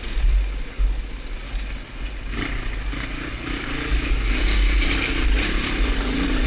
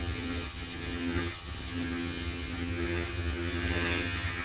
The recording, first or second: first